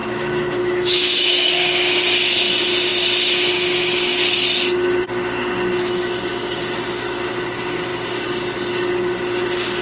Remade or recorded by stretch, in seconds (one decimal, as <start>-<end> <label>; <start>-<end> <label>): 0.0-1.7 remade; 1.7-9.8 recorded